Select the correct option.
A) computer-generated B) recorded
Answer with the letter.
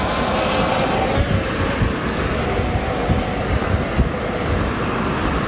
B